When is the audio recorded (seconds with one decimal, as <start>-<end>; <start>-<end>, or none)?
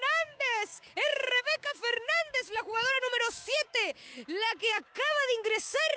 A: 4.1-4.6